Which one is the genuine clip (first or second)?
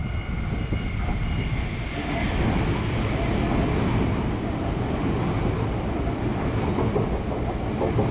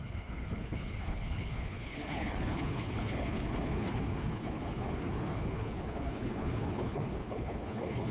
first